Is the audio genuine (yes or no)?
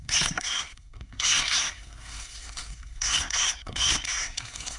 no